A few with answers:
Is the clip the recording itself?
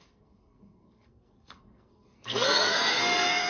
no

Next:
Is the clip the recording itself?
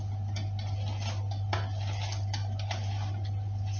yes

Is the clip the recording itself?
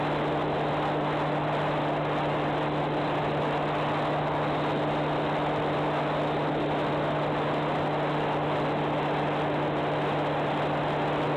yes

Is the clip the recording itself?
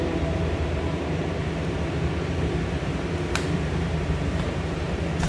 no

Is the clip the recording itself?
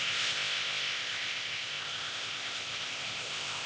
no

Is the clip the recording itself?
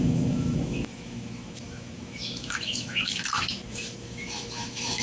no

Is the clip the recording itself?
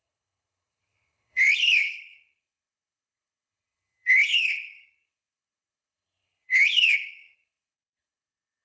no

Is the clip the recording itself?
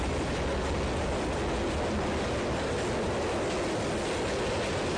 yes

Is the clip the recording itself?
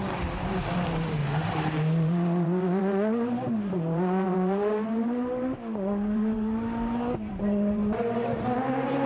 no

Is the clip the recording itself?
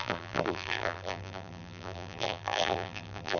no